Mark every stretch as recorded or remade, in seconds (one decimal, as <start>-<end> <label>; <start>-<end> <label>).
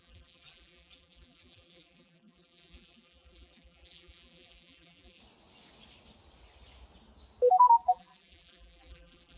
0.0-5.2 remade; 5.2-7.9 recorded; 7.9-9.4 remade